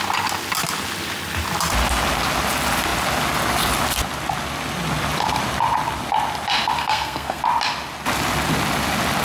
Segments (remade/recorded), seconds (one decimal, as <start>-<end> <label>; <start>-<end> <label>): 0.0-6.8 recorded; 6.8-7.4 remade; 7.4-9.2 recorded